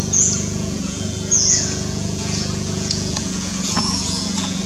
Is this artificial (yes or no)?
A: yes